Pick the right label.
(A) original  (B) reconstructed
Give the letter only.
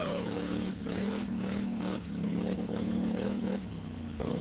B